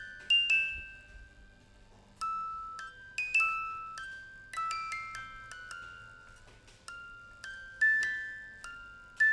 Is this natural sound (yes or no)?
yes